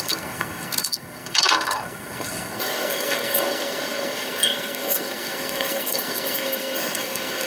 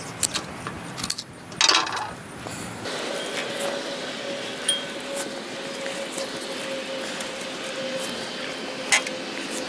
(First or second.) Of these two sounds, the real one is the second